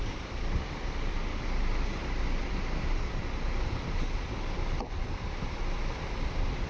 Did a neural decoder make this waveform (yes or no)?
yes